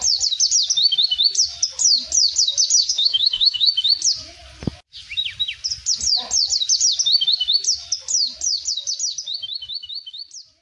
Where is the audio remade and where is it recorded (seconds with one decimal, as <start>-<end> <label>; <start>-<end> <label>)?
0.0-2.8 recorded; 2.8-3.7 remade; 3.7-10.6 recorded

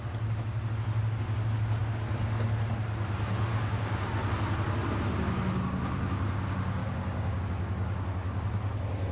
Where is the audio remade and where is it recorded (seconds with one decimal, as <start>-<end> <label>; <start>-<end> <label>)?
0.0-3.5 recorded; 3.5-4.1 remade; 4.1-6.8 recorded; 6.8-7.4 remade; 7.4-9.1 recorded